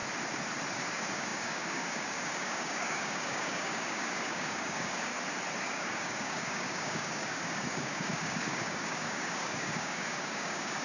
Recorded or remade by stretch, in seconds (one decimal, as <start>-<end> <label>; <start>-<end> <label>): 0.0-0.7 recorded; 0.7-5.1 remade; 5.1-5.6 recorded; 5.6-10.8 remade